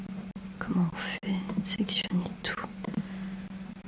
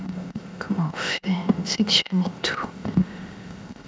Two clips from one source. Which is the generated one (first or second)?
second